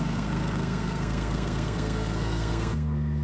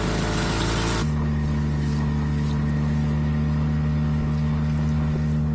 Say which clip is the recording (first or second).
second